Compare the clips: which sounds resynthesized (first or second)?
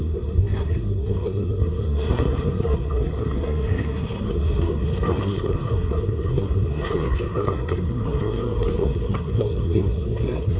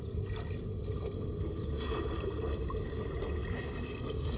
first